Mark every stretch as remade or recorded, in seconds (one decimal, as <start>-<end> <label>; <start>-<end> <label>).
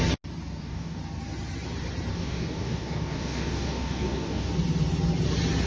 0.0-0.5 recorded; 0.5-1.0 remade; 1.0-2.1 recorded; 2.1-4.5 remade; 4.5-5.7 recorded